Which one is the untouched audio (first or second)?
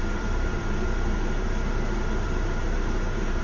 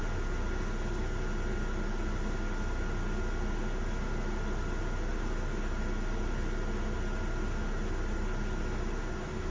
second